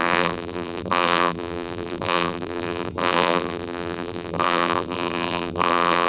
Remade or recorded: remade